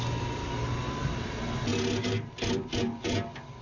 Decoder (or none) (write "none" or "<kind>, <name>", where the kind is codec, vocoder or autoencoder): none